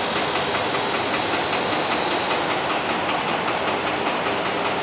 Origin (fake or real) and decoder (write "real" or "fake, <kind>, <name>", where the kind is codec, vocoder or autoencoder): real